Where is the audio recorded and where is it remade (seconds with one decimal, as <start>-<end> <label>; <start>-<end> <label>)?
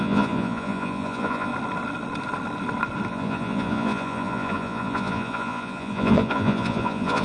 0.0-1.5 remade; 1.5-3.1 recorded; 3.1-7.2 remade